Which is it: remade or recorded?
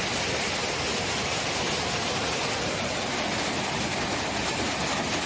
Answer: recorded